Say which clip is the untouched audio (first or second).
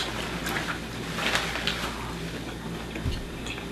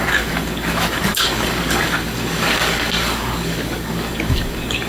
first